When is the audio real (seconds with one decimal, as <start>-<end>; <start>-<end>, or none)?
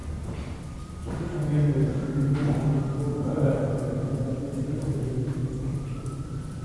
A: 0.0-4.0